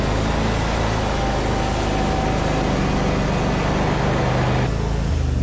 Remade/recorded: recorded